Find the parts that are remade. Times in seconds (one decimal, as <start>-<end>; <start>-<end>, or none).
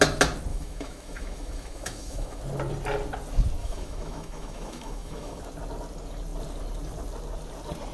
0.5-2.4; 3.6-5.4